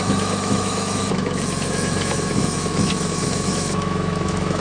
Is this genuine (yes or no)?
no